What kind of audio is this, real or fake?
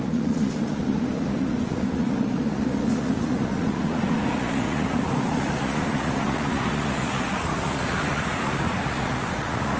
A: fake